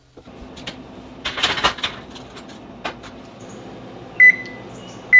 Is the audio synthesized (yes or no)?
no